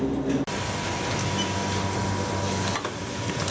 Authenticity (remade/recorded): recorded